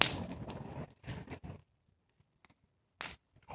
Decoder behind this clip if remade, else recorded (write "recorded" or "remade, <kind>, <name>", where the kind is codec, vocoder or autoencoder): recorded